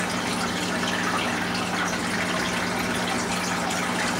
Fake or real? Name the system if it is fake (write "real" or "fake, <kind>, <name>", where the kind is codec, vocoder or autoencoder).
real